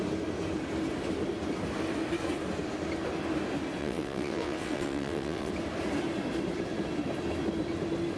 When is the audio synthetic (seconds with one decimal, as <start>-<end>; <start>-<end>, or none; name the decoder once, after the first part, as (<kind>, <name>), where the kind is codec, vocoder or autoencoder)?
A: 3.8-5.5 (vocoder, WaveNeXt)